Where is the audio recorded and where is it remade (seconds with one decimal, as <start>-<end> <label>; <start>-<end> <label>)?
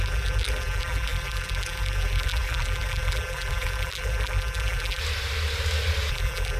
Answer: 0.0-5.0 remade; 5.0-6.1 recorded; 6.1-6.6 remade